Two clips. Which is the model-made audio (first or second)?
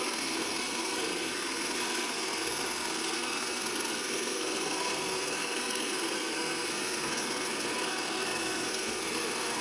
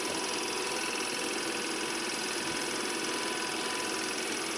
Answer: first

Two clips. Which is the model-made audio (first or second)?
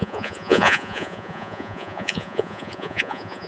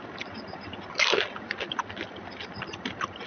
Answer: first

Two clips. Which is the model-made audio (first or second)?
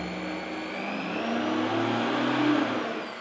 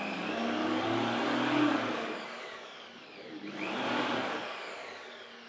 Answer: second